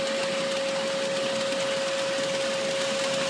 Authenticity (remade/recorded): recorded